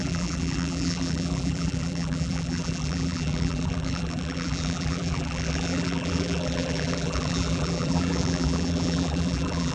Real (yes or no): no